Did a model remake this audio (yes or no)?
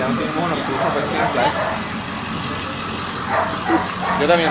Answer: no